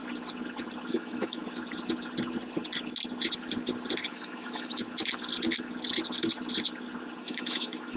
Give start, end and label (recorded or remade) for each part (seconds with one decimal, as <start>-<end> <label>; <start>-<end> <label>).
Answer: 0.0-0.9 recorded; 0.9-1.4 remade; 1.4-4.1 recorded; 4.1-4.8 remade; 4.8-7.2 recorded; 7.2-8.0 remade